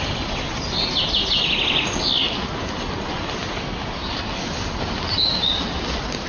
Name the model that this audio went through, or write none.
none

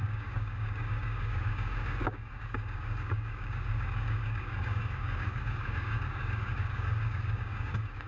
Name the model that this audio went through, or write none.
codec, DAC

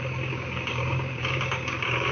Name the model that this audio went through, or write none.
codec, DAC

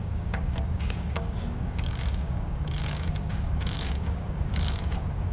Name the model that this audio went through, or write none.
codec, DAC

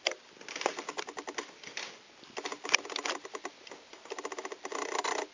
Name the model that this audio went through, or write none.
none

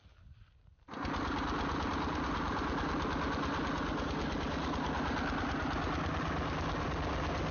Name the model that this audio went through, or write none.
none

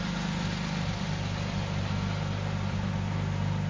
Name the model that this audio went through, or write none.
none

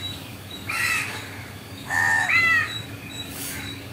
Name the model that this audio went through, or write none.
codec, DAC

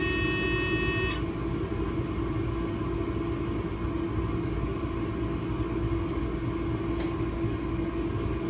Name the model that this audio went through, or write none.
none